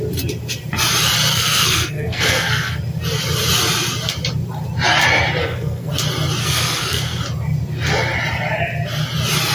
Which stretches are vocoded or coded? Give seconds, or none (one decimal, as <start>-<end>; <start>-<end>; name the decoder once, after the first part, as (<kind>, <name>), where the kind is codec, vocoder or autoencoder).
1.3-2.8 (codec, SNAC); 5.4-5.9; 6.4-7.2